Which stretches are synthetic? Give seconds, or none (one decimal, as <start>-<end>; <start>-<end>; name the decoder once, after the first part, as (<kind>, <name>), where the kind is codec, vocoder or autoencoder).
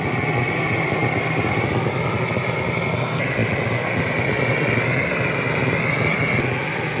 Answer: none